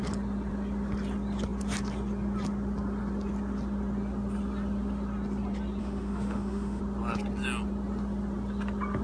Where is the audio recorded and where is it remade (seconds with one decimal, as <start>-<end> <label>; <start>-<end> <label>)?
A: 0.0-5.8 recorded; 5.8-6.8 remade; 6.8-9.0 recorded